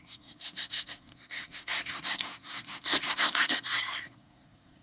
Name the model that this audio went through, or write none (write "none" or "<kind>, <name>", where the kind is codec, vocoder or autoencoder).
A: codec, SNAC